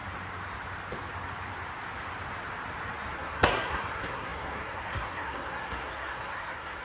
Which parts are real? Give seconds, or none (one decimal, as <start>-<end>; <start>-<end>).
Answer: 0.0-3.1